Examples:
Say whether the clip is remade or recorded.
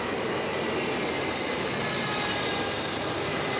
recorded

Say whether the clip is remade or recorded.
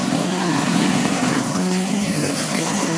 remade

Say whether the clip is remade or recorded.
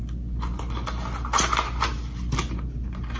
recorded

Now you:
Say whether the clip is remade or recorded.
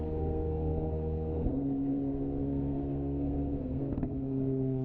remade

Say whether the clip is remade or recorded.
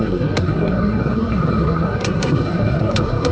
remade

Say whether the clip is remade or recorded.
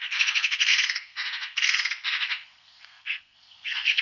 remade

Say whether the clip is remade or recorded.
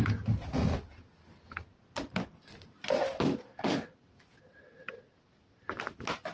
recorded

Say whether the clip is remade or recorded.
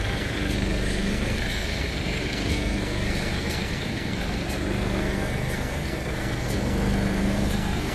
remade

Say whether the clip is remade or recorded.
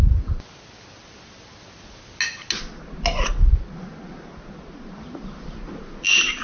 recorded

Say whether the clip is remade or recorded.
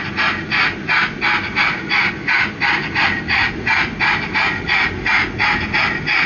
recorded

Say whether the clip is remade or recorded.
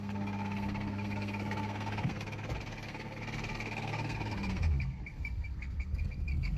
remade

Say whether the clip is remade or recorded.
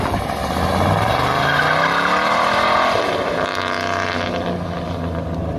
recorded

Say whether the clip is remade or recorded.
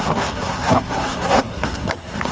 remade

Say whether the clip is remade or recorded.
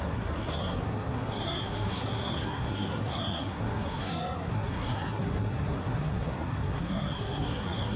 remade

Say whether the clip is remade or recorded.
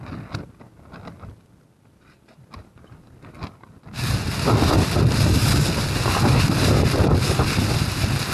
recorded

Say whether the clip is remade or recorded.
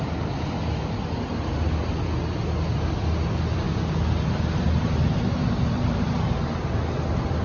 recorded